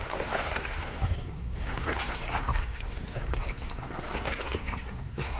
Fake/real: fake